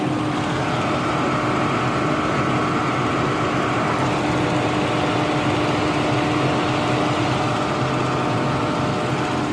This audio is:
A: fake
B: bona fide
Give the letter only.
B